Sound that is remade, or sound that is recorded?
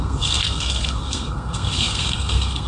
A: remade